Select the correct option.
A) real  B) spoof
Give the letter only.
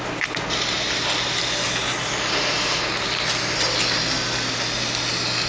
A